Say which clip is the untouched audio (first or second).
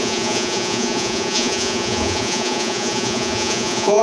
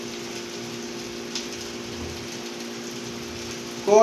second